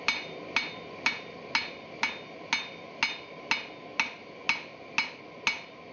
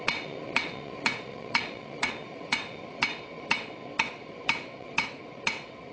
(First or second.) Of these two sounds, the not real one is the second